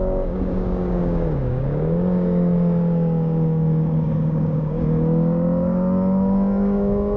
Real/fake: fake